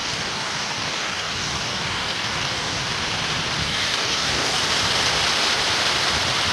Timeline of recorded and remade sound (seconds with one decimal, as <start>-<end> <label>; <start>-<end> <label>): 0.0-2.8 remade; 2.8-3.6 recorded; 3.6-4.6 remade; 4.6-6.5 recorded